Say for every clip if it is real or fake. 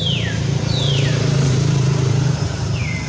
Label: fake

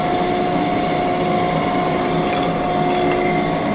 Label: real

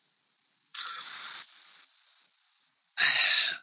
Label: real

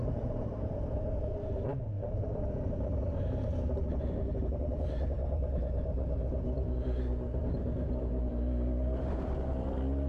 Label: fake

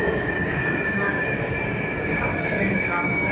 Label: fake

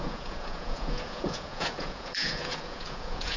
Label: fake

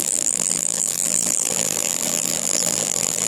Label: fake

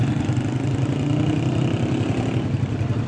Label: real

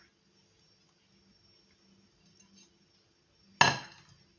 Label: real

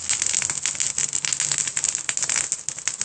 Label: real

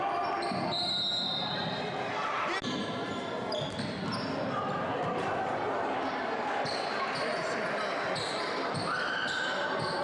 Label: real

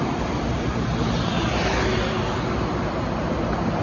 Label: fake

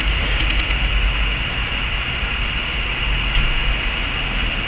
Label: real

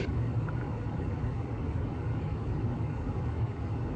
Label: fake